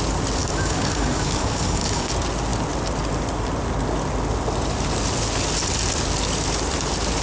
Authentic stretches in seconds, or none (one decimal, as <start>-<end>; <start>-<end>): 0.0-0.4; 2.1-7.2